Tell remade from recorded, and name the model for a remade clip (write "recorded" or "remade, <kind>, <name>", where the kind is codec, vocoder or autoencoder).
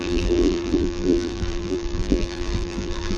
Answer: remade, vocoder, BigVGAN v2